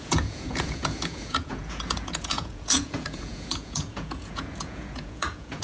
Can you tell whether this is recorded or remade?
remade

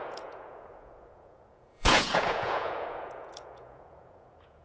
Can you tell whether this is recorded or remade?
remade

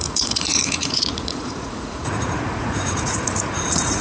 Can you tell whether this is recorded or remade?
remade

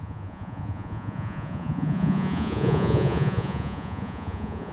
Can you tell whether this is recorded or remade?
remade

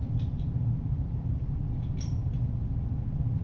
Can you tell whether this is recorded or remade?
recorded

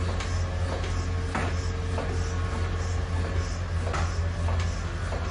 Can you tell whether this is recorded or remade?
recorded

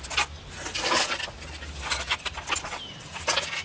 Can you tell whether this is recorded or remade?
recorded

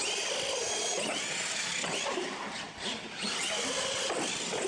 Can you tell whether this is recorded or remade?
recorded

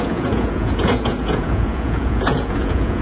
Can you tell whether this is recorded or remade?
remade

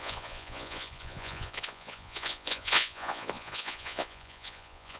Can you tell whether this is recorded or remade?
remade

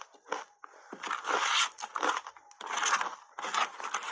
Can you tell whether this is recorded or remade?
recorded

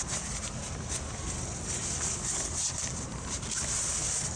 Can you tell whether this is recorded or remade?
recorded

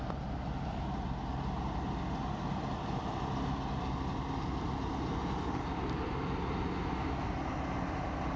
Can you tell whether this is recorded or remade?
recorded